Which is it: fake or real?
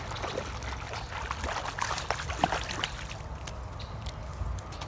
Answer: real